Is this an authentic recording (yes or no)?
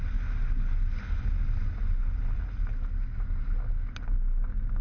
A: yes